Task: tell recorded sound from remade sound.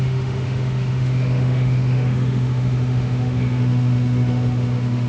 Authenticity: remade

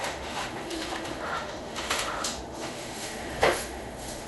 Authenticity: remade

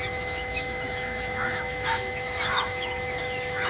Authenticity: remade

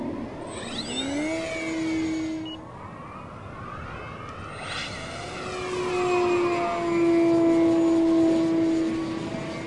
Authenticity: recorded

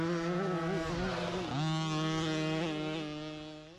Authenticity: recorded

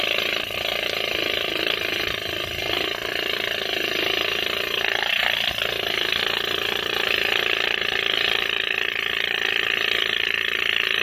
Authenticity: recorded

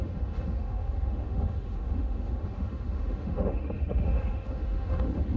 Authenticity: remade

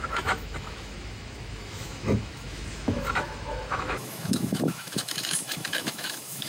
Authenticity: remade